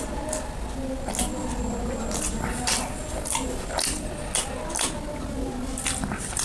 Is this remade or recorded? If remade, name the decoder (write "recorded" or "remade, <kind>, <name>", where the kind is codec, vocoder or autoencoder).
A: recorded